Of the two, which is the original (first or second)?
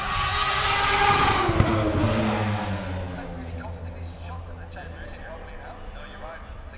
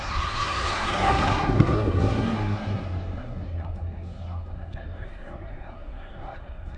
first